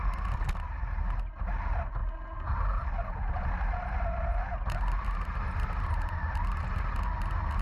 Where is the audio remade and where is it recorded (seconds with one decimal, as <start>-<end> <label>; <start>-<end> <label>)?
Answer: 0.0-7.6 recorded